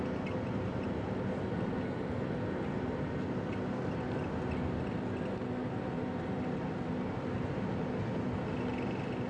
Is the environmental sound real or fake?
real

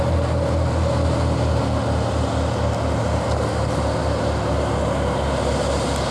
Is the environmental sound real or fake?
real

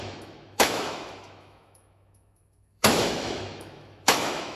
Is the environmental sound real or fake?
fake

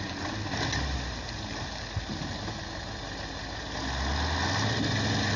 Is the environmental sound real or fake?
real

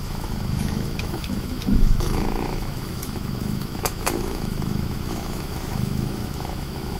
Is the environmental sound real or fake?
fake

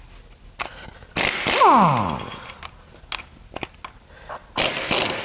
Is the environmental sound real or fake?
real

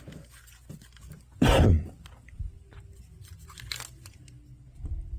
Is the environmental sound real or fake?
real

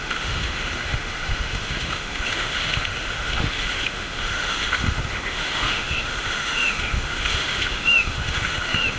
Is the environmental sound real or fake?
fake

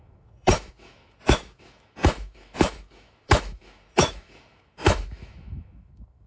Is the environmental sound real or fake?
fake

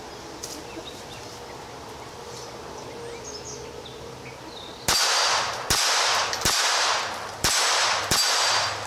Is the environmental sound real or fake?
real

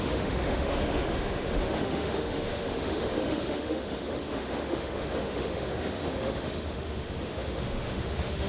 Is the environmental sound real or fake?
fake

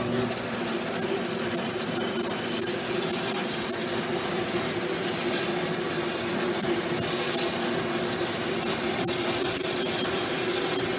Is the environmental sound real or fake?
real